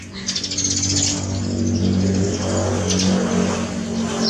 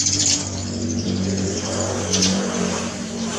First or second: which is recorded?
first